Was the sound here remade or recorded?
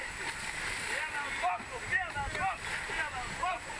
recorded